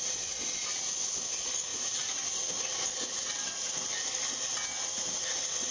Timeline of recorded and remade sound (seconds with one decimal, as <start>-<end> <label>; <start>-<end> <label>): 0.0-5.7 recorded